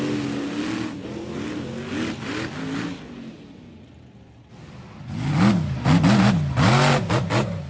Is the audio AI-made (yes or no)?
no